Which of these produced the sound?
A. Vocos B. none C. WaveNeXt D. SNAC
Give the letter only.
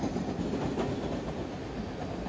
B